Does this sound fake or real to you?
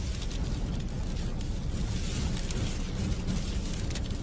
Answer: real